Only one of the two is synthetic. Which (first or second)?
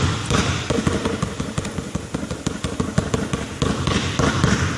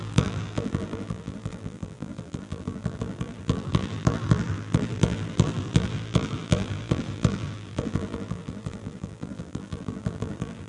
second